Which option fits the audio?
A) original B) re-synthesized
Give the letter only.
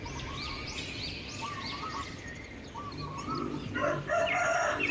A